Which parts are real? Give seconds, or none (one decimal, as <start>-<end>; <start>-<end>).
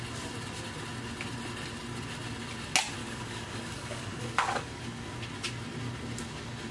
0.0-3.0; 4.8-6.7